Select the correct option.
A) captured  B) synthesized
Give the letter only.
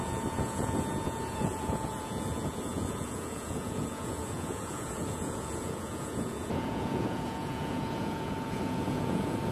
B